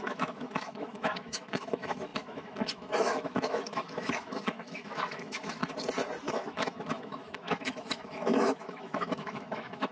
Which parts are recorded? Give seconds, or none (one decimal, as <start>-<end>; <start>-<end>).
5.6-6.3